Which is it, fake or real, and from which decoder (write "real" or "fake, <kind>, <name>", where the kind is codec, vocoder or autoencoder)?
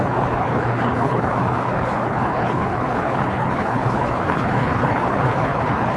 fake, codec, HILCodec